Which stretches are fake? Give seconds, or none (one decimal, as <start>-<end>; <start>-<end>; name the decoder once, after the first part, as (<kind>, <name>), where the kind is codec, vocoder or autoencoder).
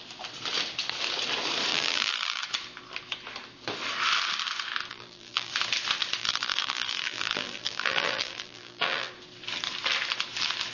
1.7-2.4 (vocoder, BigVGAN v2); 4.9-5.5; 6.2-9.1